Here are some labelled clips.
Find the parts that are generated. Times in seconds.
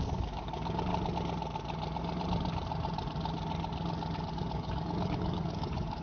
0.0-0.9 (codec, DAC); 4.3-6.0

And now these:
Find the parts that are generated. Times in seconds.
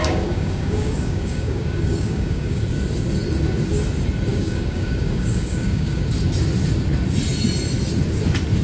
0.0-2.6 (codec, DAC); 4.3-6.1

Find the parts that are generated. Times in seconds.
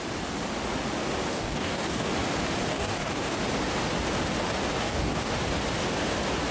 1.3-2.1 (codec, DAC); 2.7-3.4; 4.8-5.3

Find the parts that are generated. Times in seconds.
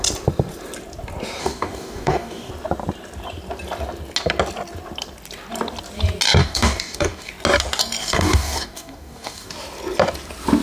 1.4-2.5 (codec, DAC); 6.4-7.3; 8.0-9.5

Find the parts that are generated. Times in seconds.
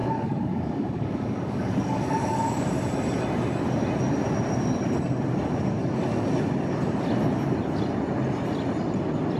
0.0-2.8 (codec, DAC)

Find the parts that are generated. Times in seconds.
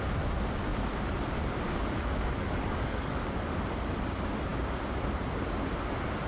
2.4-3.2 (codec, DAC)